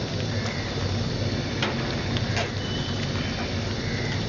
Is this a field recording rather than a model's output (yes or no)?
yes